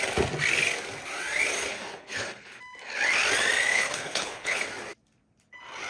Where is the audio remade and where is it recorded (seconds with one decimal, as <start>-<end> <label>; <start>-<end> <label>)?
0.0-1.7 recorded; 1.7-2.6 remade; 2.6-3.7 recorded; 3.7-4.6 remade; 4.6-5.9 recorded